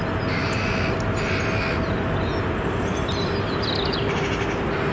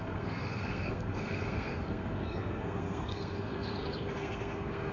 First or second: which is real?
first